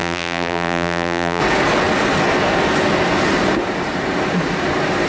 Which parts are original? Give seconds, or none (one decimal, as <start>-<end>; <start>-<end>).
1.4-5.1